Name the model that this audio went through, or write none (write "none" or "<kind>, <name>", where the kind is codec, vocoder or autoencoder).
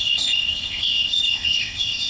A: codec, ZipCodec